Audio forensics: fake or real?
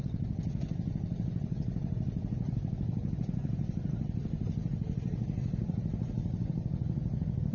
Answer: real